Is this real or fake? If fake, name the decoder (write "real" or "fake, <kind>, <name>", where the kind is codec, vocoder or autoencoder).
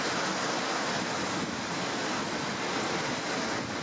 real